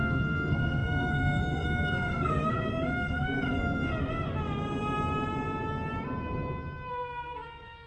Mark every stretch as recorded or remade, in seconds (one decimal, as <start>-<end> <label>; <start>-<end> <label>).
0.0-3.9 remade; 3.9-6.9 recorded; 6.9-7.9 remade